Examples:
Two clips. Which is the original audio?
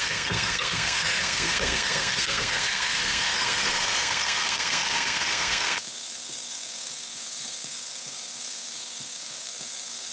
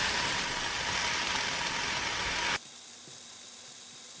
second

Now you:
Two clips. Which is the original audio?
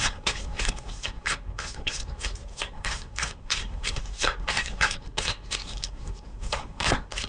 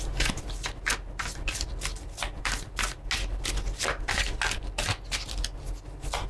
second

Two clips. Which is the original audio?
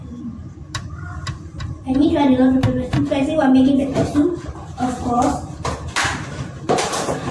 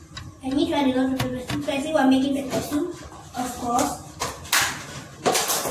second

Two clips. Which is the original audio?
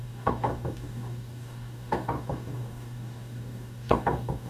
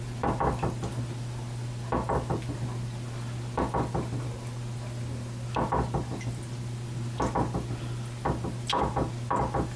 second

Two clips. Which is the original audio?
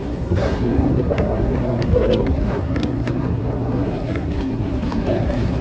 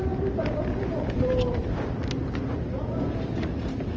second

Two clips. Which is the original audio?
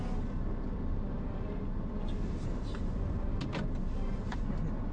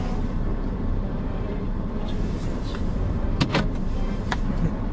first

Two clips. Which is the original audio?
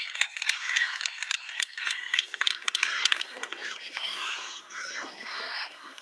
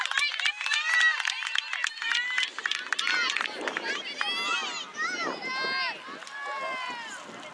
second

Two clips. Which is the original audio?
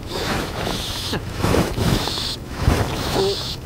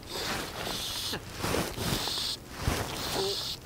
second